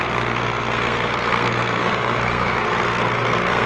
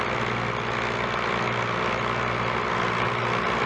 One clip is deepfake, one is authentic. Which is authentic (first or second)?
second